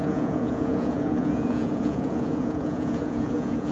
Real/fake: fake